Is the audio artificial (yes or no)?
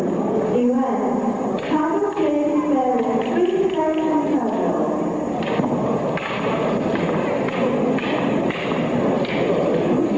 no